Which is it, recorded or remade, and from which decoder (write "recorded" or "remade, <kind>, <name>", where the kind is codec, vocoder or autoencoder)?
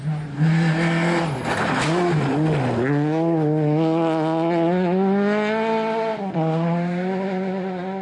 recorded